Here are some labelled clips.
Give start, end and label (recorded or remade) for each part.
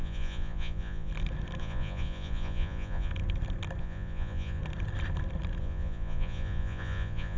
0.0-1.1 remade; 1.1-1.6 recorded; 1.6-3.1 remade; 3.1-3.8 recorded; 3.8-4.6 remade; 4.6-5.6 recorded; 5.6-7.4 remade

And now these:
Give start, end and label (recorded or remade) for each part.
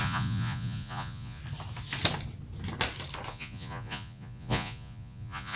0.0-1.4 remade; 1.4-3.3 recorded; 3.3-5.6 remade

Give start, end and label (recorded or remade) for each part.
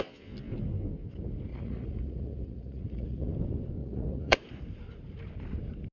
0.0-1.5 recorded; 1.5-3.3 remade; 3.3-3.8 recorded; 3.8-4.5 remade; 4.5-5.9 recorded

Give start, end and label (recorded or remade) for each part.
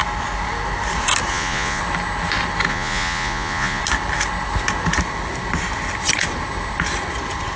0.0-1.3 recorded; 1.3-1.8 remade; 1.8-2.7 recorded; 2.7-3.8 remade; 3.8-7.6 recorded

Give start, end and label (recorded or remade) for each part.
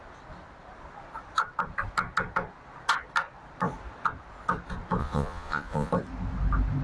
0.0-5.0 recorded; 5.0-5.9 remade; 5.9-6.8 recorded